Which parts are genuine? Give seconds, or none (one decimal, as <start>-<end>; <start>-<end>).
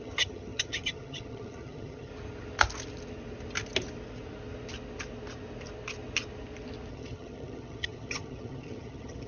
2.1-6.9